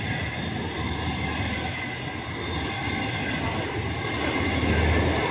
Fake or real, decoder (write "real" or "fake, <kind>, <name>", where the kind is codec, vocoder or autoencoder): real